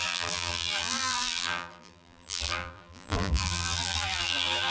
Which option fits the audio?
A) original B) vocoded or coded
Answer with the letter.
B